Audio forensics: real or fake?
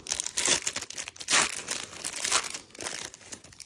real